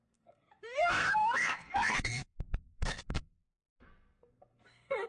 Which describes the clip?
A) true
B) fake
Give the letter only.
B